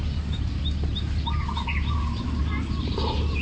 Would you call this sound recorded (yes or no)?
yes